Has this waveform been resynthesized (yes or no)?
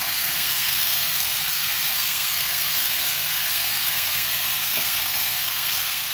yes